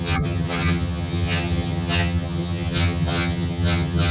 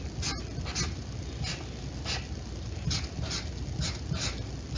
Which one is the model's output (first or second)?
first